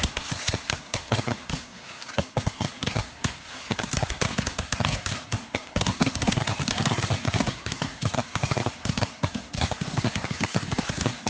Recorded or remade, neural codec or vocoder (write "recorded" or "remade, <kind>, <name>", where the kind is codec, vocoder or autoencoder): remade, codec, SNAC